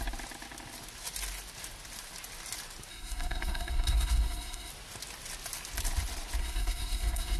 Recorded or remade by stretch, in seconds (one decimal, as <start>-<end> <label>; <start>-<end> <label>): 0.0-2.9 recorded; 2.9-4.7 remade; 4.7-6.4 recorded; 6.4-7.4 remade